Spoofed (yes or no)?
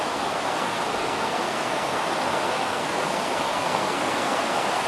yes